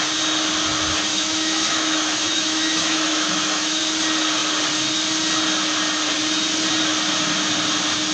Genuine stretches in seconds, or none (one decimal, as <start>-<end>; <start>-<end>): 0.0-1.1; 3.8-8.1